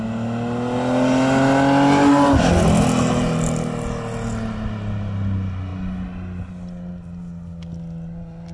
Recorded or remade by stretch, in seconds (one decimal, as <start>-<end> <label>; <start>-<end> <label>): 0.0-8.5 recorded